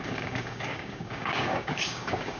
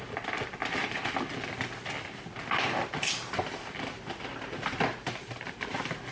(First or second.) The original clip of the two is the second